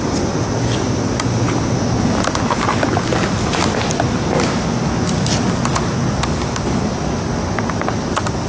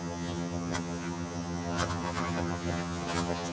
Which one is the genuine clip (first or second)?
first